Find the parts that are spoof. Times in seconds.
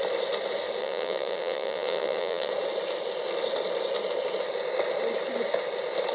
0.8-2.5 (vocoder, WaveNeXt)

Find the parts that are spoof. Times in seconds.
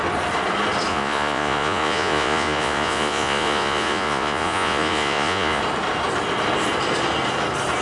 0.9-5.6 (vocoder, Vocos)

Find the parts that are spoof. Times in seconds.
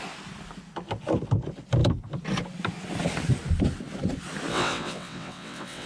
4.5-5.9 (vocoder, WaveNeXt)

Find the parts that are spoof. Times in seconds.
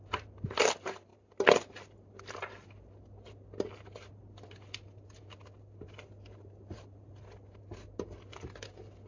none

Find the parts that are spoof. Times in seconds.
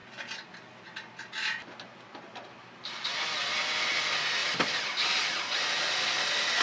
none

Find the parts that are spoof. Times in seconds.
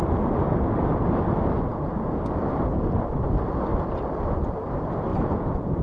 1.7-2.2 (vocoder, Vocos); 5.1-5.8